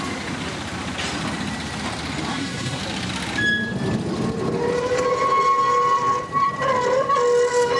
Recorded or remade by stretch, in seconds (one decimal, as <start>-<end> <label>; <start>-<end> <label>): 0.0-2.3 recorded; 2.3-2.8 remade; 2.8-7.8 recorded

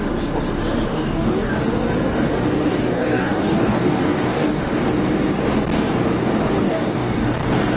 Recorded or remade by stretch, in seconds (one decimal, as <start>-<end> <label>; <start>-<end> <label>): 0.0-0.9 recorded; 0.9-1.5 remade; 1.5-2.7 recorded; 2.7-4.6 remade; 4.6-6.6 recorded; 6.6-7.8 remade

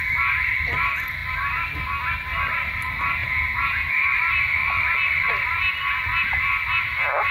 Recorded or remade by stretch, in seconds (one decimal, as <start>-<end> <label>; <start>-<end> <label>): 0.0-3.2 recorded; 3.2-3.9 remade; 3.9-7.3 recorded

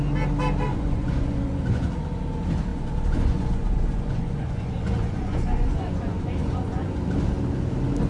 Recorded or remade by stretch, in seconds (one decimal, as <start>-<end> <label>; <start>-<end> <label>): 0.0-0.7 recorded; 0.7-1.9 remade; 1.9-2.7 recorded; 2.7-7.1 remade; 7.1-8.1 recorded

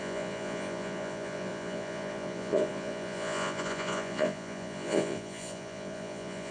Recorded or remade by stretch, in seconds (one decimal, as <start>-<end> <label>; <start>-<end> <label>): 0.0-6.5 remade

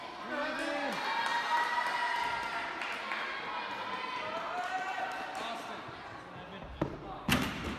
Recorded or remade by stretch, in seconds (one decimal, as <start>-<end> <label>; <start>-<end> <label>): 0.0-7.8 recorded

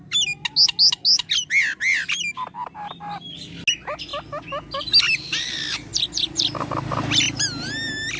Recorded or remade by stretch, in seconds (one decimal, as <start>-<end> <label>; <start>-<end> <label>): 0.0-5.9 recorded; 5.9-7.7 remade; 7.7-8.2 recorded

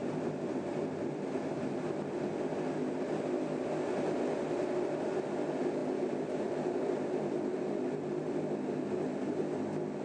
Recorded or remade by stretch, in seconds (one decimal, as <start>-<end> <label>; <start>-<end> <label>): 0.0-2.3 remade; 2.3-5.8 recorded; 5.8-7.6 remade; 7.6-10.0 recorded